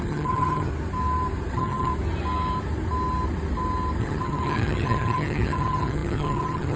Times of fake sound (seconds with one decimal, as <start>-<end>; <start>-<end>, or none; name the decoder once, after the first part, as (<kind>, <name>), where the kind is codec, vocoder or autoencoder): 0.0-0.7 (vocoder, HiFi-GAN); 1.5-1.9; 4.0-6.8